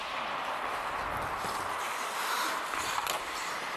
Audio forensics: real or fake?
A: real